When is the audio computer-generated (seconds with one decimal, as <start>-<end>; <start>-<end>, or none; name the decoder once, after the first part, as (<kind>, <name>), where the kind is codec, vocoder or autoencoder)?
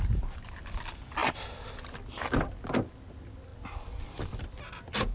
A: none